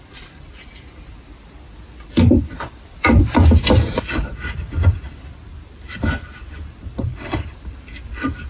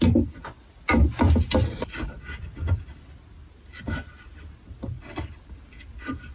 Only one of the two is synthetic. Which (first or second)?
first